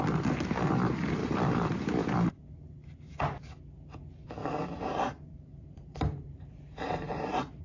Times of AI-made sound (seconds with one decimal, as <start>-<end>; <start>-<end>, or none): 1.2-1.8; 4.4-7.6